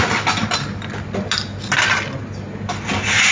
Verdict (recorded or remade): recorded